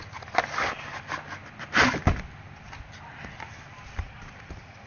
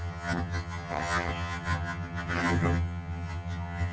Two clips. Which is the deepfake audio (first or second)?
second